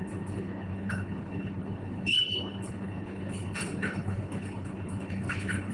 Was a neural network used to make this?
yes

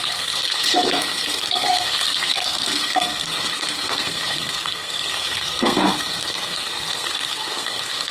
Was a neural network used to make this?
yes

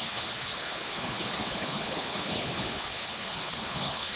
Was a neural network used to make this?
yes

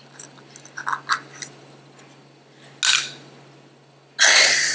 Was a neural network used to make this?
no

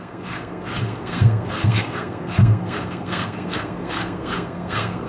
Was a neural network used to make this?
yes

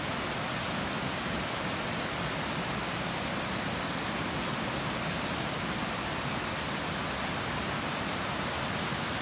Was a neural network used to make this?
no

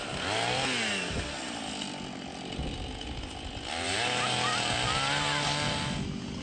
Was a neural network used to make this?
no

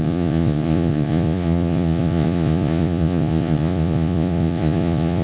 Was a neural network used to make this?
yes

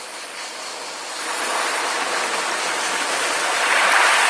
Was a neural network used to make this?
no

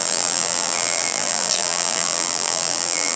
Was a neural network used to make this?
yes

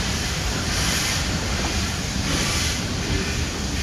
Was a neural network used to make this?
yes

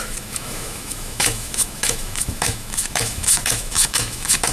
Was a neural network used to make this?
yes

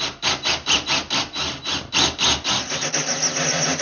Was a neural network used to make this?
no